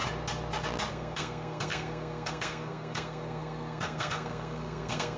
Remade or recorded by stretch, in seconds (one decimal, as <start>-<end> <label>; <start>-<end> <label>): 0.0-0.9 recorded; 0.9-5.2 remade